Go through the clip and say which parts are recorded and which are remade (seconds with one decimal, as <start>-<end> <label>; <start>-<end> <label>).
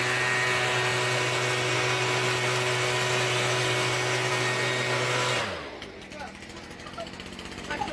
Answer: 0.0-7.9 recorded